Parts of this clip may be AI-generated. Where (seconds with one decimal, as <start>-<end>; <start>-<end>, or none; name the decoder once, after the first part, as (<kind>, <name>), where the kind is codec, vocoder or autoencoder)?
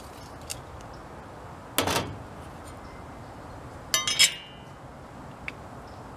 none